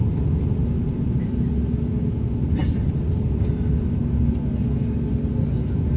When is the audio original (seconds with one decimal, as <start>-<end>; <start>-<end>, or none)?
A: 0.0-0.6; 1.5-6.0